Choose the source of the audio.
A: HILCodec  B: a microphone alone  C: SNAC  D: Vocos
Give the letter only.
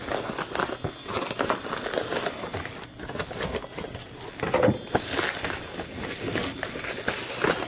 B